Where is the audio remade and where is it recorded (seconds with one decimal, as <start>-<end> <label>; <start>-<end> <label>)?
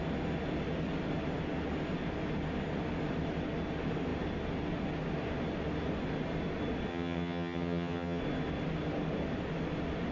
0.0-6.9 recorded; 6.9-8.2 remade; 8.2-10.1 recorded